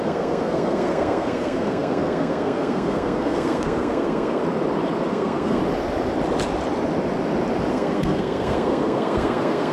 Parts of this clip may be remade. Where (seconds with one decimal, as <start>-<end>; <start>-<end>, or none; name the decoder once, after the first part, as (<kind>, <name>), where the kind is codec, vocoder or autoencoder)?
0.0-4.4 (codec, SNAC); 5.1-5.6; 7.7-9.7